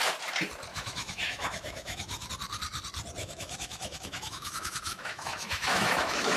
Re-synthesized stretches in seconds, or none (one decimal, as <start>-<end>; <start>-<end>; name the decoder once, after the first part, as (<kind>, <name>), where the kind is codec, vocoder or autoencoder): 0.7-2.3 (autoencoder, DAC-VAE); 3.2-6.4